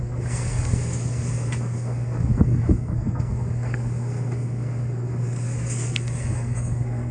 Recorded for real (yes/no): no